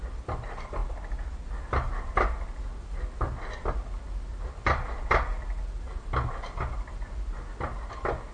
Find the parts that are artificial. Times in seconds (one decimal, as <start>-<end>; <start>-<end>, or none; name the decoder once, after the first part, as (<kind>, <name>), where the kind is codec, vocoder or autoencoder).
none